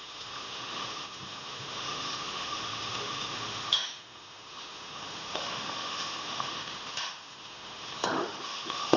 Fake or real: fake